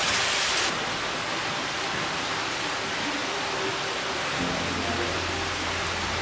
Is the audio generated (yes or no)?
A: no